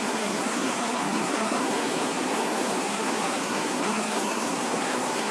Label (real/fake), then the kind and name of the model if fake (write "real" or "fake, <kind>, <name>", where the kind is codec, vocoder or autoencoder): fake, codec, SNAC